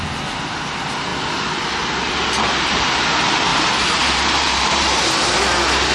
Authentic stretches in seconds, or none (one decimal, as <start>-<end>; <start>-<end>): 0.0-3.5; 5.4-5.9